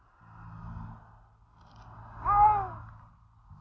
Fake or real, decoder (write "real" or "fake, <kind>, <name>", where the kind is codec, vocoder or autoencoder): real